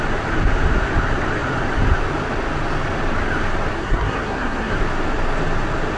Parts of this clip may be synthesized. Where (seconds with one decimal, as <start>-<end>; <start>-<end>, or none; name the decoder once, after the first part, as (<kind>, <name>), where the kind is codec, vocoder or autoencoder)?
3.7-4.7 (codec, SNAC)